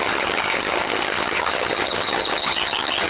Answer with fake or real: fake